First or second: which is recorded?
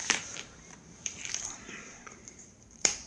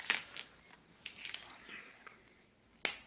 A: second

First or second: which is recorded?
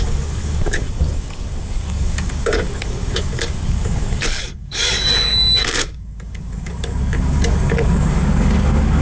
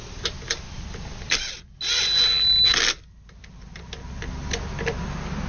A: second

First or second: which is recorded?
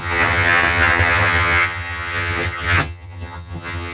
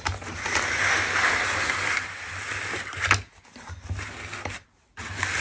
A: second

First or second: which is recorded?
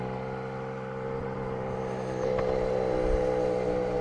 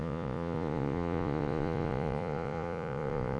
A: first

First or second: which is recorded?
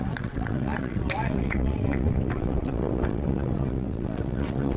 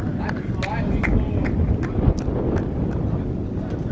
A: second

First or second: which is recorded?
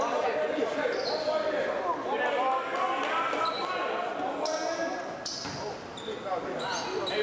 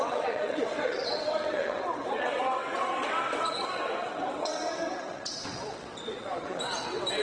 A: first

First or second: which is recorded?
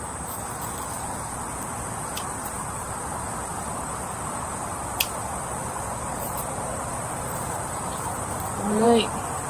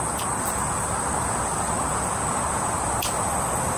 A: second